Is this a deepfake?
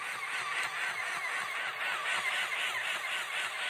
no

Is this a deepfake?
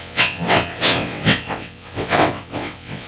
yes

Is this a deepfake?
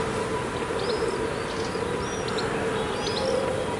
no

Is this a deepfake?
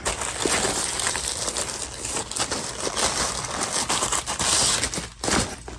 no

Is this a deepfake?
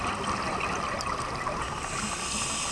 no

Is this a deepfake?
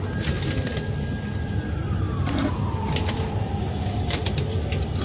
no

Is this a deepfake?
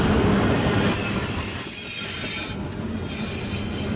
no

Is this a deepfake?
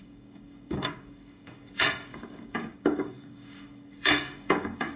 yes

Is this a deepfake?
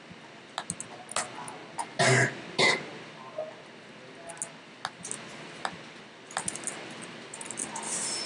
no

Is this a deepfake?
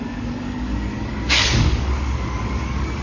yes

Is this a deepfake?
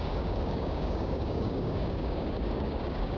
yes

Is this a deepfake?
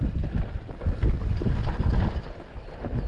no